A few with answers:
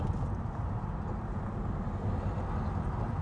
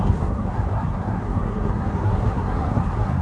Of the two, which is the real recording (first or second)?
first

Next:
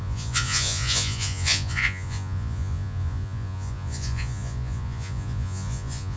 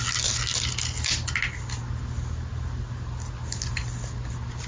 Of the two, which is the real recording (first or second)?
second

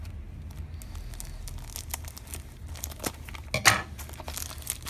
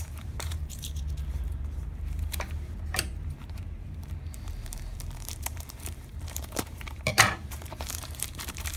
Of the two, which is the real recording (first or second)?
first